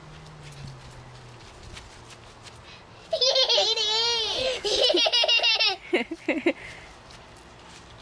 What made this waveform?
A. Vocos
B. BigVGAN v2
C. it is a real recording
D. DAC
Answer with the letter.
C